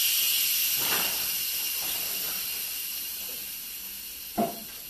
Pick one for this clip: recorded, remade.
recorded